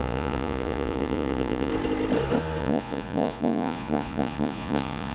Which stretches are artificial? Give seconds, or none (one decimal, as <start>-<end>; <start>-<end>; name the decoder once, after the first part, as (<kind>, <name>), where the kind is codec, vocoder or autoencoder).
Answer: 0.0-1.7 (vocoder, Vocos); 2.6-5.1